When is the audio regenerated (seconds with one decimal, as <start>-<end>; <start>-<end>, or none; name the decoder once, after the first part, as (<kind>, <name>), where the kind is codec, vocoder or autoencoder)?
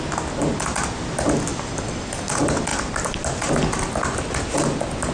none